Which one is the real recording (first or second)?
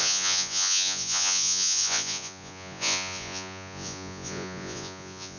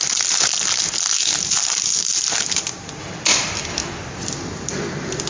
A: second